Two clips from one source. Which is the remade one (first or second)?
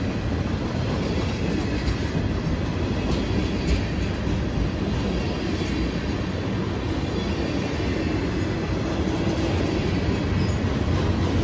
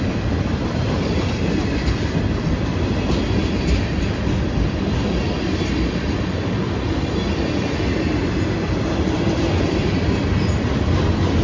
second